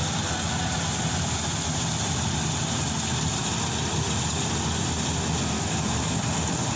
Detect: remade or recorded recorded